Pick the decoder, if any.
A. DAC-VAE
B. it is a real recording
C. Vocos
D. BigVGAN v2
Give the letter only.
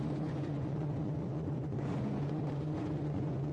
C